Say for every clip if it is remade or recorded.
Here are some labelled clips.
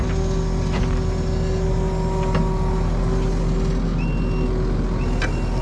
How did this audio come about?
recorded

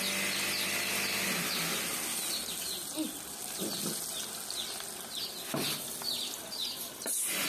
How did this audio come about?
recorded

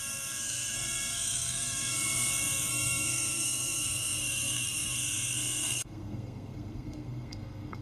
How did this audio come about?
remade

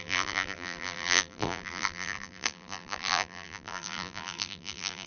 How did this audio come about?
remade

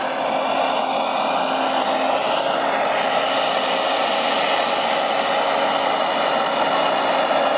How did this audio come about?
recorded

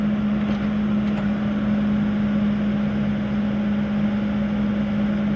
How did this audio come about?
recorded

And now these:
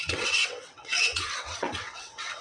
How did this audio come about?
remade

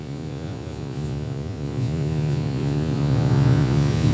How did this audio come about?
remade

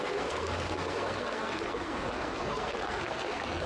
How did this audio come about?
remade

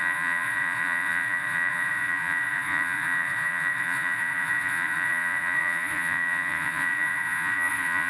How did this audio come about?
remade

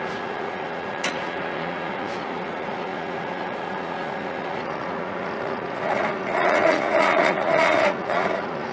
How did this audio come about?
remade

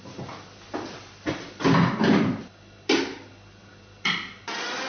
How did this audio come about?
recorded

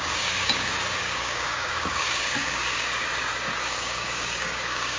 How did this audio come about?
remade